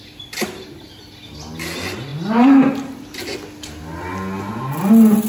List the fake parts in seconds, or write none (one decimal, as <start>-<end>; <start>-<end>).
none